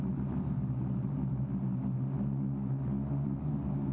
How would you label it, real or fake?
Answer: real